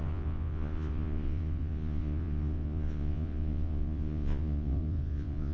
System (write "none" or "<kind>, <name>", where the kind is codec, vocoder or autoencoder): vocoder, Vocos